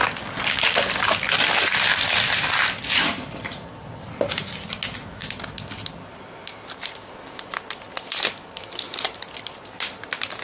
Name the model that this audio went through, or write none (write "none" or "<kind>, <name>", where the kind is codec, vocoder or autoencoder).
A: none